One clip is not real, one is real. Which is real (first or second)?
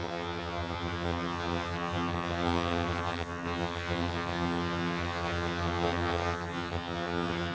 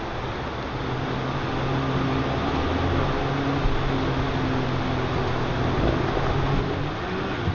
second